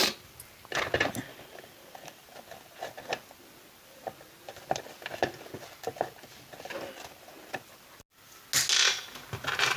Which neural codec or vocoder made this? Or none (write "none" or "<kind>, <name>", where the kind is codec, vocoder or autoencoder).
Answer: none